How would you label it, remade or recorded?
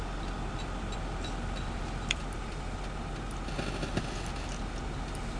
recorded